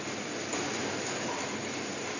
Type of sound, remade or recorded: recorded